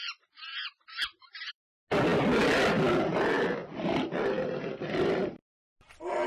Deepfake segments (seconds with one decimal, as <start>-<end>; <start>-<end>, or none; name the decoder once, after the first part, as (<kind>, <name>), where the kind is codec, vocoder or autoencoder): 0.0-1.7 (vocoder, BigVGAN v2); 3.9-5.4